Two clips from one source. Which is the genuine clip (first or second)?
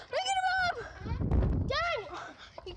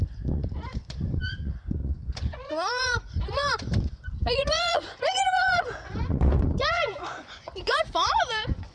first